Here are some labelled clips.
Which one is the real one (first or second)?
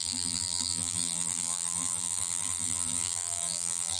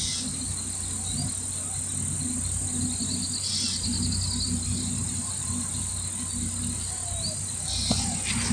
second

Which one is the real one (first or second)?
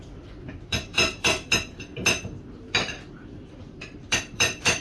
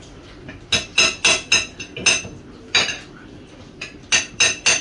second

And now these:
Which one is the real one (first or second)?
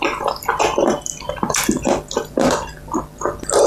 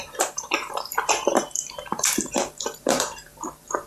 first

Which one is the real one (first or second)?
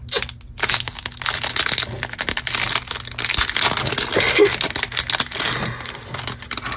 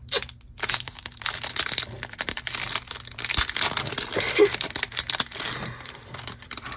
first